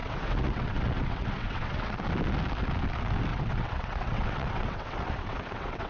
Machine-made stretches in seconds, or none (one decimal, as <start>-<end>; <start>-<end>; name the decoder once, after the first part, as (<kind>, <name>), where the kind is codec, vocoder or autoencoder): 0.0-2.1 (vocoder, WaveNeXt); 3.3-5.9